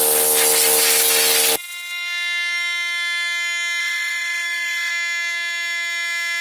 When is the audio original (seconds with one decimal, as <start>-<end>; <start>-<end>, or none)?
0.0-3.8; 4.9-6.4